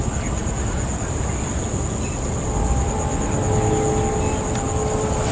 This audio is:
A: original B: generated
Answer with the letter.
A